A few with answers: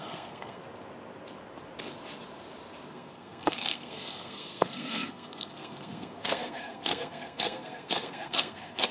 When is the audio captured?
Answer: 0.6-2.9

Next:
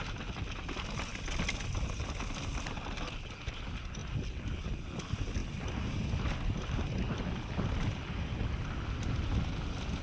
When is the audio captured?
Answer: 0.0-10.0

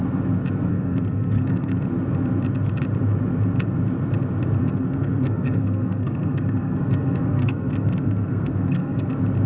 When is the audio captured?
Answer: 0.0-0.7; 1.8-4.6; 9.1-9.5